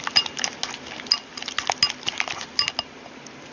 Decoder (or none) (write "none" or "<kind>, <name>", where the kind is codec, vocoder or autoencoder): none